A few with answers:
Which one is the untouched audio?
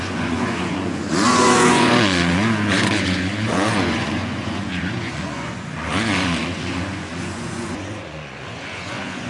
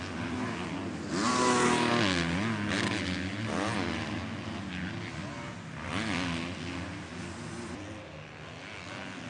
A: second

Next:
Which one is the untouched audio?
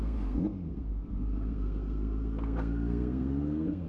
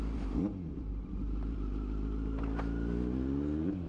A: second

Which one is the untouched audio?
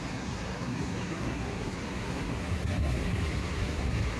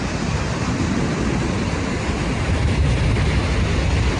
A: second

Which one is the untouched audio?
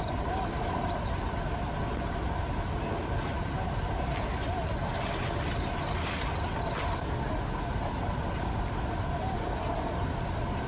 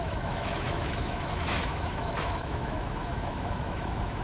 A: first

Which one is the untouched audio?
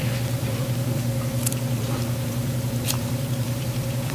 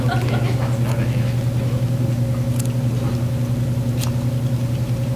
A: second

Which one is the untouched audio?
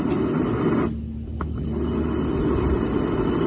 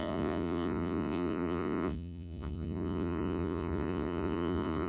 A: first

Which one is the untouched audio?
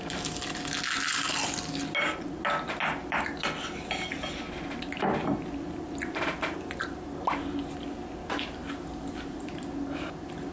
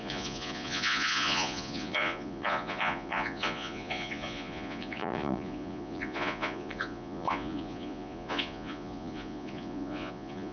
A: first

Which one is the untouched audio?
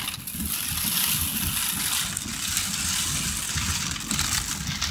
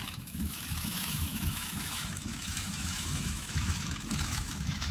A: first